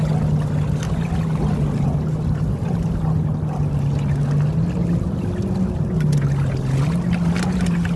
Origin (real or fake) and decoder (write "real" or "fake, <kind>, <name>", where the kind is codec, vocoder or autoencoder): real